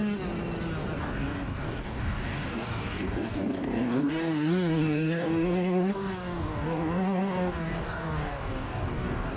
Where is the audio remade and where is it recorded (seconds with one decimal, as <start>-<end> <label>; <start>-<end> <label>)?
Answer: 0.0-1.0 recorded; 1.0-9.4 remade